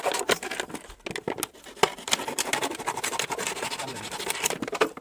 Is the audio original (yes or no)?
yes